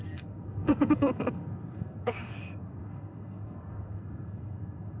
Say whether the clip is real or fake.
fake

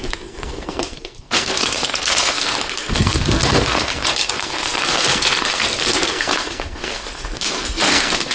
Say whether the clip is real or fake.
fake